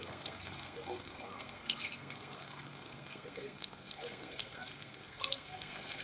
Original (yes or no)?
no